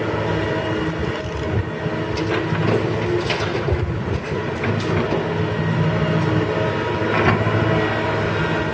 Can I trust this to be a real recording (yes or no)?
yes